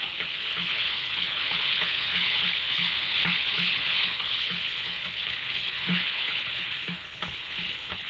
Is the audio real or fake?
fake